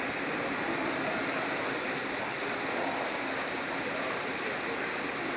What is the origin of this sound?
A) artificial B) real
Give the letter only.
A